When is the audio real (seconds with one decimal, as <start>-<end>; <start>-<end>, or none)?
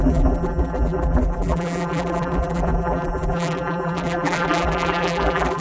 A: none